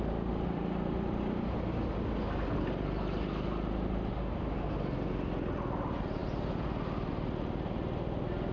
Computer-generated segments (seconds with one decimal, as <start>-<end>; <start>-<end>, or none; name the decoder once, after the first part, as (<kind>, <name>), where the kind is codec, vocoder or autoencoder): none

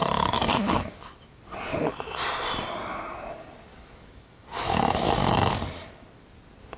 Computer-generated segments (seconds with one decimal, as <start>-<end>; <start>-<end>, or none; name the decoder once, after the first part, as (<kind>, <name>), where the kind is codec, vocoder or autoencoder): 0.0-1.4 (autoencoder, DAC-VAE); 3.7-5.5

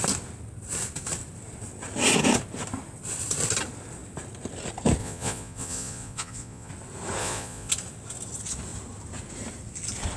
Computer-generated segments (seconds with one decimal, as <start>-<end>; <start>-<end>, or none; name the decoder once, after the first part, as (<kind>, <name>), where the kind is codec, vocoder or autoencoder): 5.0-6.7 (vocoder, Vocos); 7.2-7.7

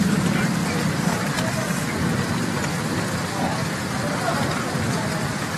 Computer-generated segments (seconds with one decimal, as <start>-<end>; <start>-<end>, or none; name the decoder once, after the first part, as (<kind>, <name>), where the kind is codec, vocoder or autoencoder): 0.6-1.5 (vocoder, BigVGAN v2); 3.6-5.6

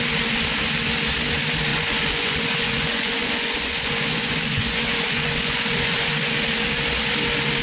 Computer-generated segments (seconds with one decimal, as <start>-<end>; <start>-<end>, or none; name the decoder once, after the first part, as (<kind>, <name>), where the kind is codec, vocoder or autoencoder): 1.7-6.3 (vocoder, Vocos)

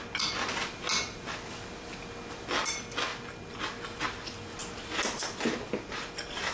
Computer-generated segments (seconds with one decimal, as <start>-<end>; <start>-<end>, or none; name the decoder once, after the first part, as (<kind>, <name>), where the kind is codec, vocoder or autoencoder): none

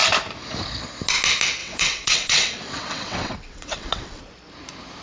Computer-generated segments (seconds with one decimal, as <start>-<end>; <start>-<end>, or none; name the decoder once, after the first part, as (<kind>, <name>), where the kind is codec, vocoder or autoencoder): 1.6-4.2 (vocoder, WaveNeXt)

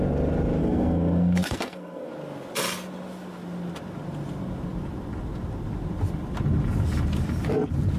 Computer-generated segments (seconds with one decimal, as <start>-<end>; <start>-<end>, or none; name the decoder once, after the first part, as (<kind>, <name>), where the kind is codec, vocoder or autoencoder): 0.6-2.1 (codec, SNAC)